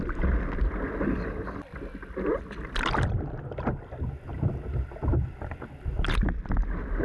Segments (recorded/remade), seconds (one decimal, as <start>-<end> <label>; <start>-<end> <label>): 0.0-7.0 recorded